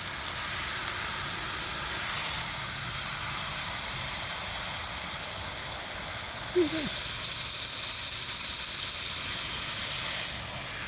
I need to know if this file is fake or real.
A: real